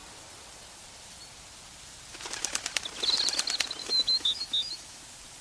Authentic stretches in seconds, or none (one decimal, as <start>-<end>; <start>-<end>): 0.0-3.8; 5.0-5.4